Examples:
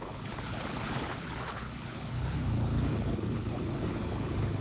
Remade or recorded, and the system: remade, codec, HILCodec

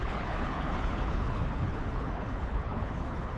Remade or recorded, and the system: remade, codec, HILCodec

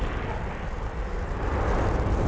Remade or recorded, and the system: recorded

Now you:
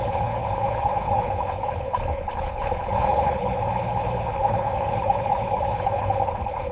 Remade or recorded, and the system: remade, codec, HILCodec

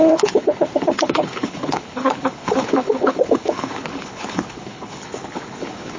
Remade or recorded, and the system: remade, codec, HILCodec